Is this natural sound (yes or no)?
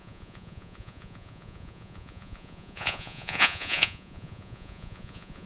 no